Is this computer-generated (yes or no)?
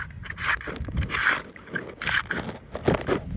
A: no